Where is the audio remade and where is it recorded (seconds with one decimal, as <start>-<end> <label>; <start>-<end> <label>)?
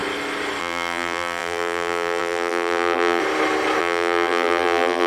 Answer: 0.0-0.6 recorded; 0.6-3.2 remade; 3.2-3.8 recorded; 3.8-5.1 remade